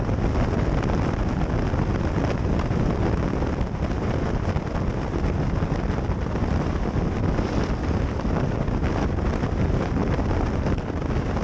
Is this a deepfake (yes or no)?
no